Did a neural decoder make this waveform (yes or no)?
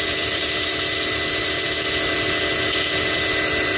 no